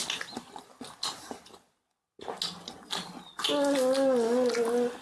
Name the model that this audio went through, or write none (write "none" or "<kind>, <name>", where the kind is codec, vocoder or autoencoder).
none